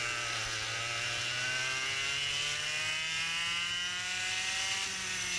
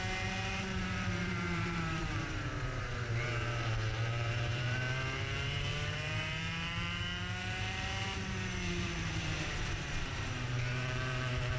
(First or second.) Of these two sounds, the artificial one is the second